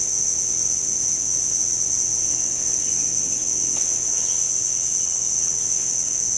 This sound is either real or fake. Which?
fake